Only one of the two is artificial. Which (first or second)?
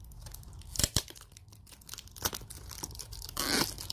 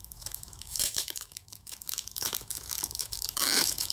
second